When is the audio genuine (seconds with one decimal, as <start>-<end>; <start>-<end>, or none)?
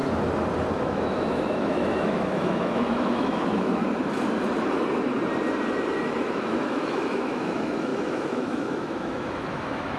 0.0-0.7; 3.8-6.2